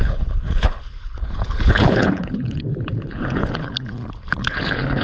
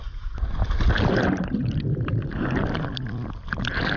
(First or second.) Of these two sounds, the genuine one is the second